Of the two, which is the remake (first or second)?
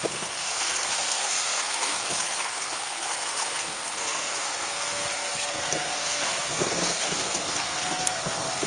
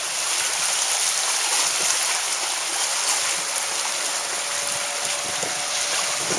first